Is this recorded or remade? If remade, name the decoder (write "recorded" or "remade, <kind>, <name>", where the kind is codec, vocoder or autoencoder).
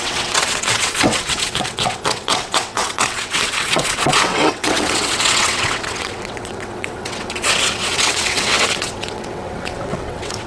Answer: remade, vocoder, WaveNeXt